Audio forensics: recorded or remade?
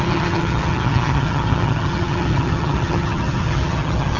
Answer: remade